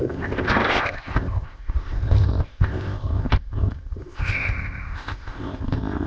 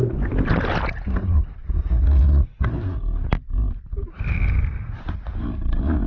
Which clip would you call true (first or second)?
second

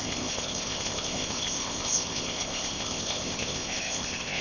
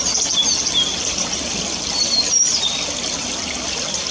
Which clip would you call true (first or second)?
second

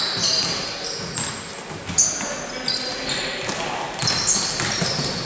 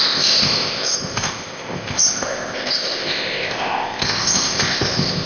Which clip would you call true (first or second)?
first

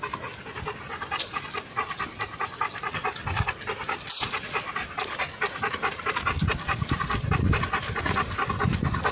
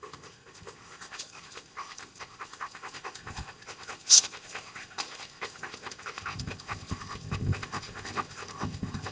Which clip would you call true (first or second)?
first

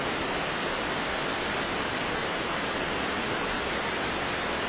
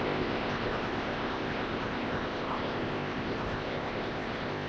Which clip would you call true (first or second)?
first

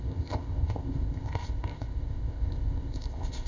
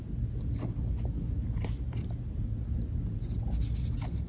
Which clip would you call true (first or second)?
second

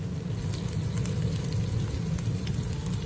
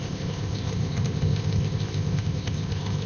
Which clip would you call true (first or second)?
first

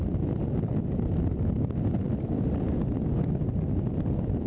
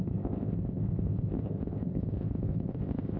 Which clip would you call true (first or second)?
first